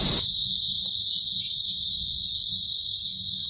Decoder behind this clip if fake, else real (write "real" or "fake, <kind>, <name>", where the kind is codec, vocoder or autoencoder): real